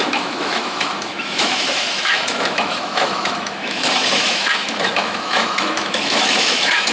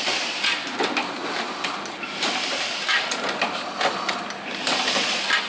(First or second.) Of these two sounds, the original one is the second